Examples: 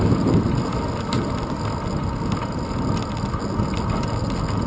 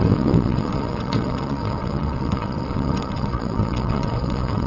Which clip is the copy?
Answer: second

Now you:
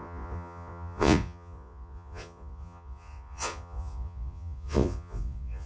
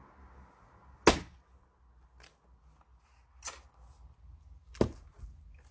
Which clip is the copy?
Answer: first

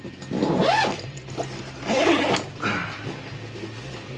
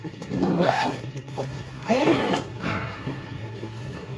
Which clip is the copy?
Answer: second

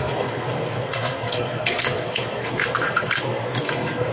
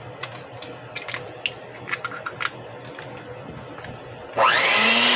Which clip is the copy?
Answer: first